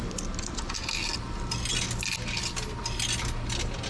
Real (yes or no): yes